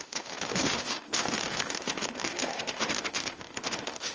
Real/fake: fake